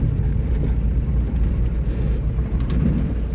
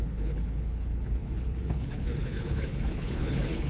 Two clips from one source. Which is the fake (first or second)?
second